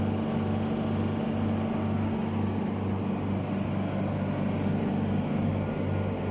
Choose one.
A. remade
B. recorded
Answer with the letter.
B